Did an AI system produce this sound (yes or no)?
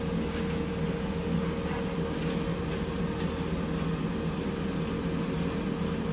no